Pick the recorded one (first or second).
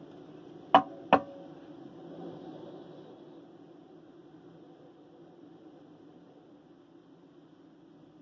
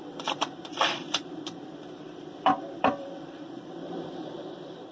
first